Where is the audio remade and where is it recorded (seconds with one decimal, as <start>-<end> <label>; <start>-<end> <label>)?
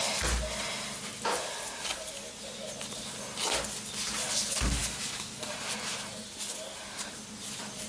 0.0-4.8 recorded; 4.8-5.6 remade; 5.6-7.9 recorded